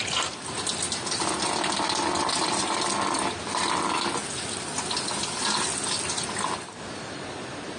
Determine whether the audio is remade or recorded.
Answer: recorded